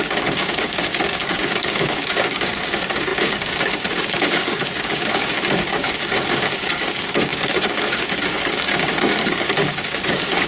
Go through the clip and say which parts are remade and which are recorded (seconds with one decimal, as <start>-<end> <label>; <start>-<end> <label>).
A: 0.0-10.5 remade